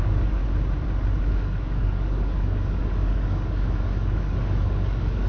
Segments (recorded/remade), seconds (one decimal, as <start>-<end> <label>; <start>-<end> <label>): 0.0-0.4 remade; 0.4-1.3 recorded; 1.3-5.3 remade